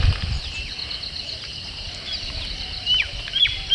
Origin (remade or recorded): recorded